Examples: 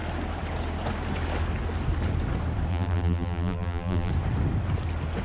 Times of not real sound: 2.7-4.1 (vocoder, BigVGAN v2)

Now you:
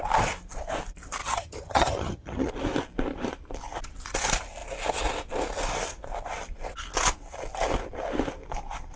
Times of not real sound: 1.2-2.5 (vocoder, HiFi-GAN)

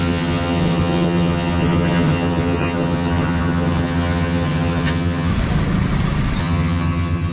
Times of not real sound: 0.0-5.3 (vocoder, HiFi-GAN); 6.4-7.3

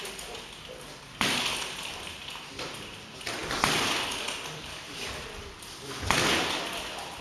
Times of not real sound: none

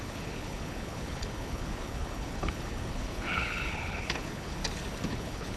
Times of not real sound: 0.0-4.6 (codec, HILCodec); 5.1-5.6

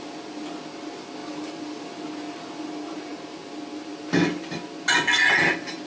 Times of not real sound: none

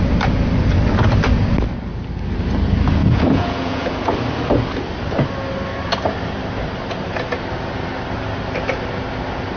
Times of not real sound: 3.0-4.1 (vocoder, Vocos)